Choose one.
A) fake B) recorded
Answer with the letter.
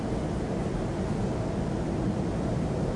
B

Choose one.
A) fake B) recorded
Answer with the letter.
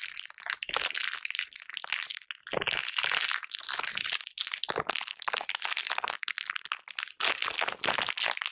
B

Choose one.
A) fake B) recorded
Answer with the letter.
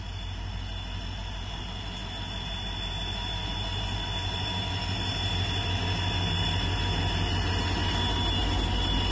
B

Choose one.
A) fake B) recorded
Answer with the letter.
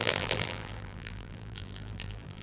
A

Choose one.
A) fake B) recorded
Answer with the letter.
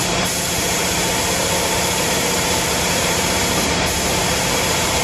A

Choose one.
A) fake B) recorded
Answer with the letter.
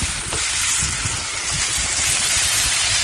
A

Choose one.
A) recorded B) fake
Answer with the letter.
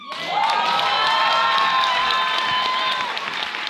A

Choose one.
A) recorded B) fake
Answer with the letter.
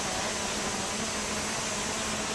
A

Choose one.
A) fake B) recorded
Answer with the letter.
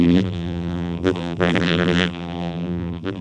A